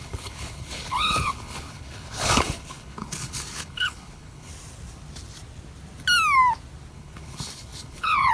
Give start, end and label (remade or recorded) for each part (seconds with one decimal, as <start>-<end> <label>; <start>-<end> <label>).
0.0-4.5 remade; 4.5-6.9 recorded; 6.9-8.3 remade

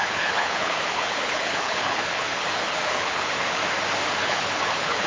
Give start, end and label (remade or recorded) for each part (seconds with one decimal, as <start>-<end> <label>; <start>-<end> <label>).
0.0-3.6 remade; 3.6-4.2 recorded; 4.2-5.1 remade

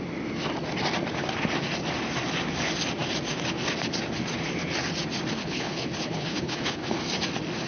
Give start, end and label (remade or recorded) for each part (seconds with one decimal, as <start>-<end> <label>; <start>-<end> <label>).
0.0-5.4 recorded; 5.4-7.0 remade; 7.0-7.7 recorded

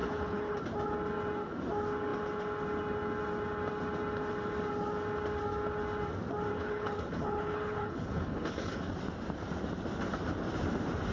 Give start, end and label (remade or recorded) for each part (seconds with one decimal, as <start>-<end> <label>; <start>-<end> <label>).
0.0-0.6 remade; 0.6-6.5 recorded; 6.5-8.9 remade; 8.9-11.1 recorded

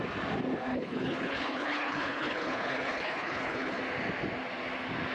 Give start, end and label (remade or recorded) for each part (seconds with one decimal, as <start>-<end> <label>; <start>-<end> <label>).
0.0-0.7 recorded; 0.7-3.8 remade; 3.8-5.1 recorded

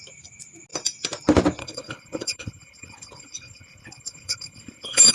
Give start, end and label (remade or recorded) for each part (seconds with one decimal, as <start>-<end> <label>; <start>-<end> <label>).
0.0-1.6 recorded; 1.6-5.1 remade